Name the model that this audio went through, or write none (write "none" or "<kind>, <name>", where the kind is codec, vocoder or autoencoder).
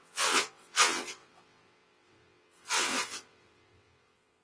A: vocoder, WaveNeXt